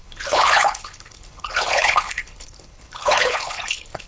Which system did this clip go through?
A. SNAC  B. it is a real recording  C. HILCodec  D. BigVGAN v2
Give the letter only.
C